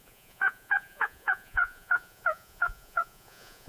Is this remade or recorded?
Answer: remade